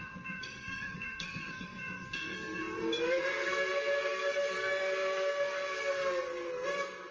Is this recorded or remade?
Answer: remade